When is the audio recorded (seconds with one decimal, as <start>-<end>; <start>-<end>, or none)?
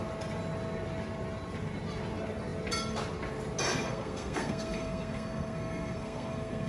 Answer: 0.0-3.7